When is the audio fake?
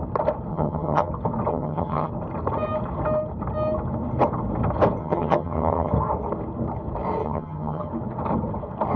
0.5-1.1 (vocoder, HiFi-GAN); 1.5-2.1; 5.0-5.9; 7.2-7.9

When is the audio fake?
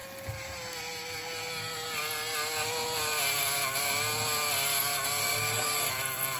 5.2-5.9 (codec, SNAC)